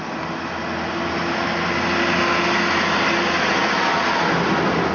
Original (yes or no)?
yes